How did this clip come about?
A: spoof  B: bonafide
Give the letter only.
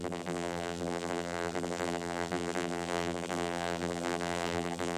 A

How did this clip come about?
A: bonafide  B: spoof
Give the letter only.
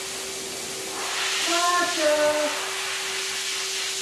A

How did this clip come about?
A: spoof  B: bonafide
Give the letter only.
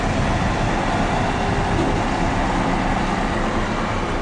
B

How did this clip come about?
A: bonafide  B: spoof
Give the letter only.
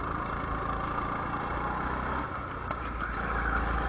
A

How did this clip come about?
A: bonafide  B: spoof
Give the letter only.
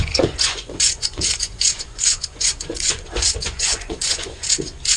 B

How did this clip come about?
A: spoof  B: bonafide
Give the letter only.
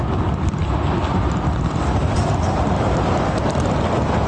A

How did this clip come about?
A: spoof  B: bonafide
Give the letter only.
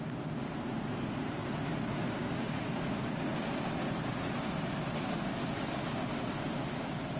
B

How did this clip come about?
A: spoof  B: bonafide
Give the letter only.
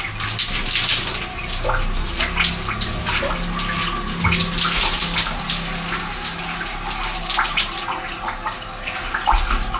B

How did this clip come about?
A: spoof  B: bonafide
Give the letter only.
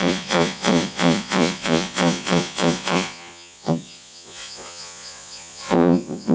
A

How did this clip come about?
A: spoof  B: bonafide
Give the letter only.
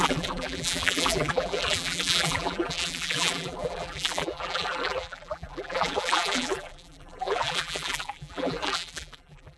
A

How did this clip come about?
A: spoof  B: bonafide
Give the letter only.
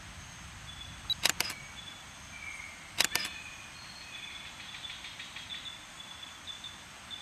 B